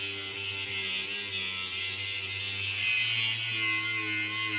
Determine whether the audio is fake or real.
real